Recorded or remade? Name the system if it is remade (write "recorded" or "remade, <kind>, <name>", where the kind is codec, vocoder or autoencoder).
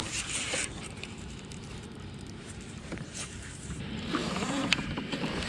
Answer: remade, vocoder, BigVGAN v2